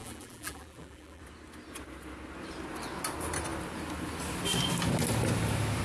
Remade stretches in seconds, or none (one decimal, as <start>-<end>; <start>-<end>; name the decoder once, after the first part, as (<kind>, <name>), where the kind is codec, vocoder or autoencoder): 0.0-1.2 (vocoder, BigVGAN v2)